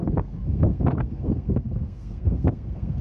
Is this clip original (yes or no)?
no